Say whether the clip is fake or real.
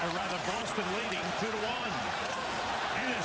fake